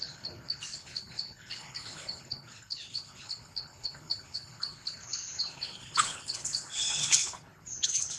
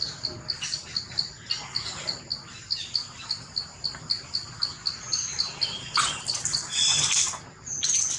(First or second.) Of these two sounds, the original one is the second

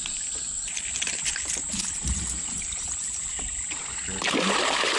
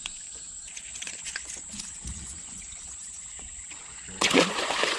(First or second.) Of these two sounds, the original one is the first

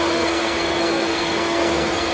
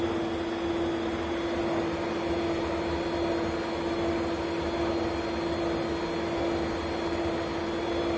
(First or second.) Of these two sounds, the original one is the second